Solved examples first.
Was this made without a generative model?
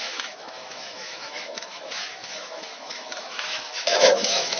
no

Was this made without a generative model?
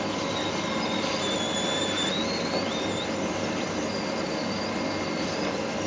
yes